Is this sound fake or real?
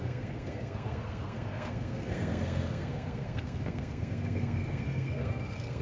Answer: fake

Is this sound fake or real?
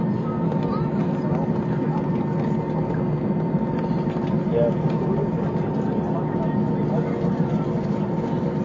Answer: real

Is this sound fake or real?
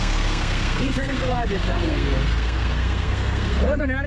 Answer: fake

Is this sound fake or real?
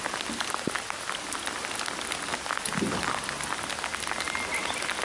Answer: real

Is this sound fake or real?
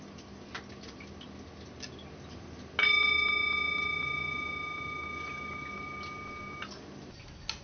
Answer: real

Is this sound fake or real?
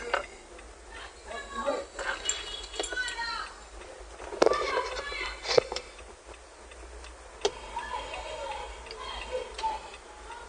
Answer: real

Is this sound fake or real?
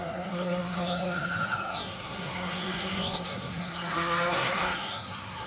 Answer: fake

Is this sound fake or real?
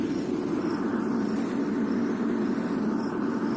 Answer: real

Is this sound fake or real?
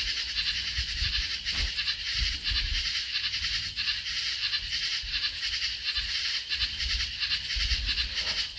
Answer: real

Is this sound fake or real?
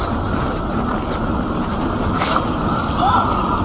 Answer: real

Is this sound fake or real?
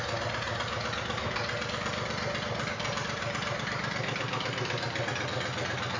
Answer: real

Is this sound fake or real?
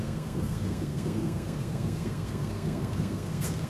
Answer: fake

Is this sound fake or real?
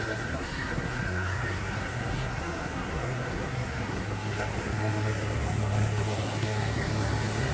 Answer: fake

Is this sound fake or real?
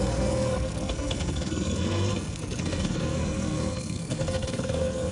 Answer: fake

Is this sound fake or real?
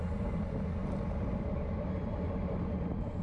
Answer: real